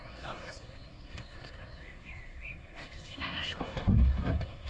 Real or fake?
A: fake